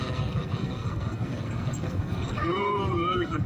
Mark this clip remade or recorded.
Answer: remade